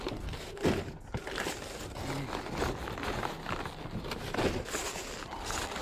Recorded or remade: recorded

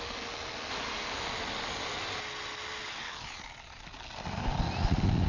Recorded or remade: recorded